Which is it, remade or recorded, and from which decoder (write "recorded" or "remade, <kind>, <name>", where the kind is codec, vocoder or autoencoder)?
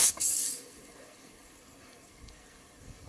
remade, codec, SNAC